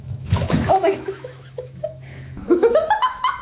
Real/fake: fake